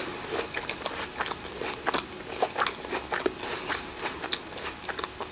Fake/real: real